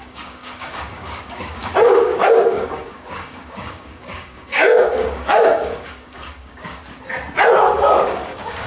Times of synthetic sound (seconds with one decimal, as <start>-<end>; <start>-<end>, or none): 0.0-6.8; 7.6-8.7